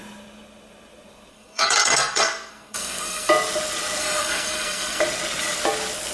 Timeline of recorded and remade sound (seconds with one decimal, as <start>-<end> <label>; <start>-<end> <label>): 0.0-1.3 recorded; 1.3-3.3 remade; 3.3-4.0 recorded; 4.0-5.0 remade; 5.0-6.1 recorded